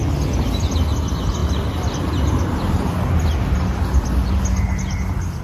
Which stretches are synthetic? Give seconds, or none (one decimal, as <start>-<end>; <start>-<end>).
none